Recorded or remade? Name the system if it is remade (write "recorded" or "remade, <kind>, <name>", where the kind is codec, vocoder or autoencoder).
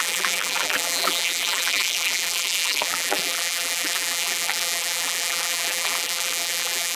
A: remade, vocoder, BigVGAN v2